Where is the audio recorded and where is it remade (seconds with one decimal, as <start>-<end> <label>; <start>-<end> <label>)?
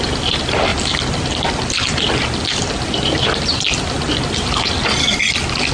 0.0-5.7 recorded